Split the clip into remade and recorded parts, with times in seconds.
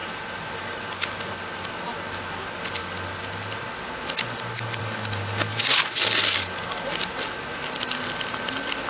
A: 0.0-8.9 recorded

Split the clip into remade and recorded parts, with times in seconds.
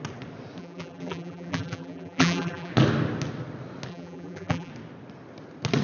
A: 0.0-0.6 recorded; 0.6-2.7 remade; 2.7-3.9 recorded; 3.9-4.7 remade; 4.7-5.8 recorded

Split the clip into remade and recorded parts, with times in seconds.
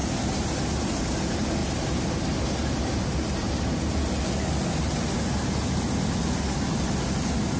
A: 0.0-7.6 recorded